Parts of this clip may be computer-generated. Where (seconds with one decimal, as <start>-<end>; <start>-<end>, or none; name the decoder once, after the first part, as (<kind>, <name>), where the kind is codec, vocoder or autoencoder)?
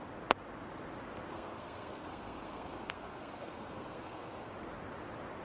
1.3-4.5 (codec, SNAC)